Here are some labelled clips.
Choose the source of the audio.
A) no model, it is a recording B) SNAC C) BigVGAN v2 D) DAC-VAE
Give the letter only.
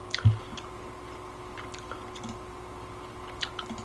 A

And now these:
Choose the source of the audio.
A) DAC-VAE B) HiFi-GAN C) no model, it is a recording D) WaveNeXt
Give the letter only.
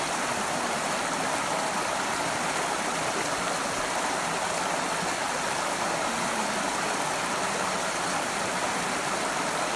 C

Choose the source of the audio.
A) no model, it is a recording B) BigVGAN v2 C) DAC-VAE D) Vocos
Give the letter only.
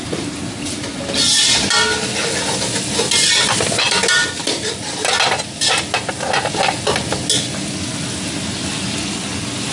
A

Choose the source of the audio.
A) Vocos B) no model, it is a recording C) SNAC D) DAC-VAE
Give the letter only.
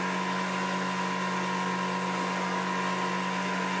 B